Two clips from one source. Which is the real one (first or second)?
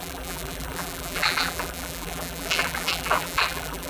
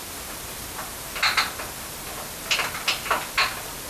second